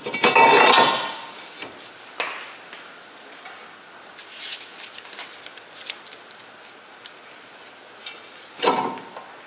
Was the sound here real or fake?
real